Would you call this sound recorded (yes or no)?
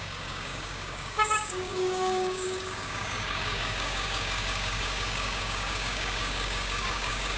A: no